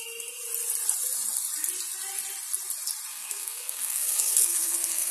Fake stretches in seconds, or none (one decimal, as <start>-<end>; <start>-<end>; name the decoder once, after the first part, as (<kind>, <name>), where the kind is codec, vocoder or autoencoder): 3.1-5.1 (codec, SNAC)

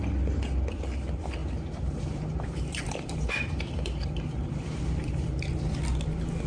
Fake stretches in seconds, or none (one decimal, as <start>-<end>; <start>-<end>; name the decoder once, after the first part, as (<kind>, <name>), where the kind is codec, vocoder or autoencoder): 1.4-5.3 (vocoder, BigVGAN v2)

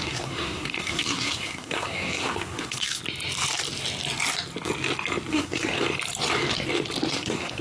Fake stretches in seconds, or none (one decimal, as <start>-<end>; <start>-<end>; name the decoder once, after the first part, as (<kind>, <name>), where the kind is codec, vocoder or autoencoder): 0.0-3.0 (codec, SNAC); 5.3-5.7; 7.1-7.6

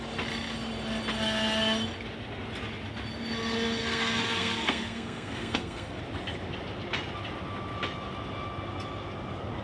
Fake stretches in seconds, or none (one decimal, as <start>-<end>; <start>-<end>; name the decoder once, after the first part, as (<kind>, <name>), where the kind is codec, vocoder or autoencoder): 3.8-6.0 (codec, SNAC)

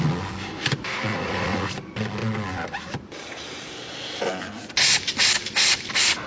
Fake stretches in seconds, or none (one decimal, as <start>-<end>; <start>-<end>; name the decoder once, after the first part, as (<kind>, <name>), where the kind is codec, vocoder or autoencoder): 1.1-1.7 (vocoder, Vocos)